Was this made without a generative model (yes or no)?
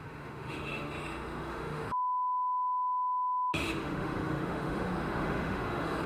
no